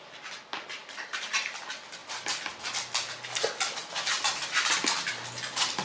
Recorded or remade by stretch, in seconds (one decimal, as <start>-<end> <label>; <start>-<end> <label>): 0.0-5.8 recorded